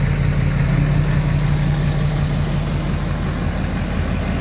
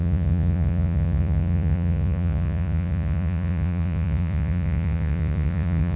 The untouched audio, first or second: first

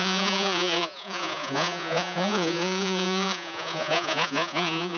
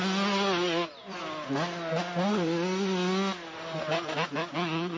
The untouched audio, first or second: second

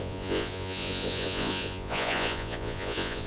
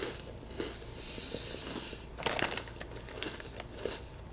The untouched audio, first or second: second